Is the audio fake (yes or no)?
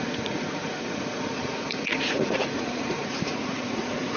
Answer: yes